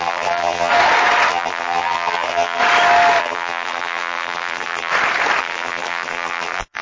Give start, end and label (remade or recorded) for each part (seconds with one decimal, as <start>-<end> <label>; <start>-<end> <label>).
0.0-0.7 remade; 0.7-1.3 recorded; 1.3-2.6 remade; 2.6-3.2 recorded; 3.2-4.9 remade; 4.9-5.4 recorded; 5.4-6.8 remade

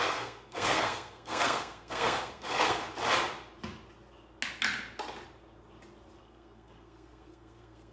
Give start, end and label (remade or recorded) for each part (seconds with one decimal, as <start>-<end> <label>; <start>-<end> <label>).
0.0-2.8 remade; 2.8-6.2 recorded; 6.2-7.9 remade

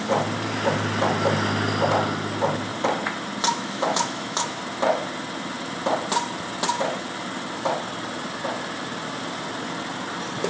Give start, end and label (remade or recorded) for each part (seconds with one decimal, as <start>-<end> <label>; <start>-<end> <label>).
0.0-3.5 recorded; 3.5-4.6 remade; 4.6-10.5 recorded

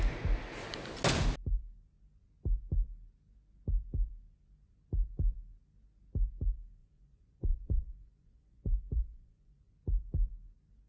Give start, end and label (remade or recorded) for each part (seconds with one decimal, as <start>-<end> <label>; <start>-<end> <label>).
0.0-6.8 recorded; 6.8-9.7 remade; 9.7-10.9 recorded

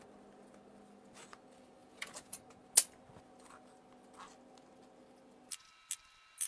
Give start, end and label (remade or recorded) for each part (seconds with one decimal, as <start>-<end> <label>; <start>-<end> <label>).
0.0-1.8 recorded; 1.8-2.4 remade; 2.4-6.5 recorded

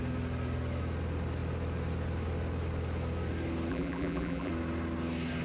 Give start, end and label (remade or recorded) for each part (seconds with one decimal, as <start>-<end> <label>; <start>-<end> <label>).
0.0-3.7 recorded; 3.7-4.5 remade; 4.5-5.4 recorded